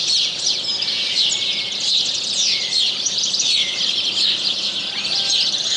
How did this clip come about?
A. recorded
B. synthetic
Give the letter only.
A